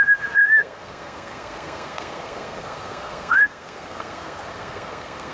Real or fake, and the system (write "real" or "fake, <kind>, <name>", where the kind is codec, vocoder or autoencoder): fake, codec, SNAC